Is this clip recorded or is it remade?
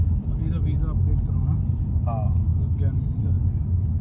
recorded